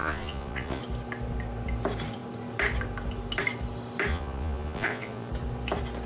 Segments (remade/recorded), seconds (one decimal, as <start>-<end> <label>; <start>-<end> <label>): 0.0-0.8 remade; 0.8-4.1 recorded; 4.1-5.3 remade; 5.3-6.1 recorded